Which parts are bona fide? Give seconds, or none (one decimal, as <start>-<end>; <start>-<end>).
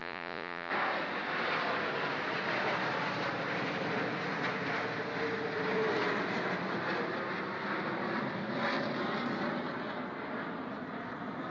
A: 0.7-11.5